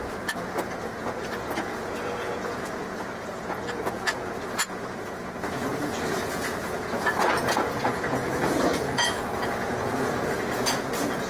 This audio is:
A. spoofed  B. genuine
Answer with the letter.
A